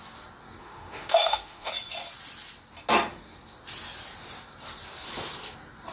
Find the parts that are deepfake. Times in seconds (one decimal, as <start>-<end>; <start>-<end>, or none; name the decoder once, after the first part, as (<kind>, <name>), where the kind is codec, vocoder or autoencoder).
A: 0.6-1.7 (autoencoder, DAC-VAE)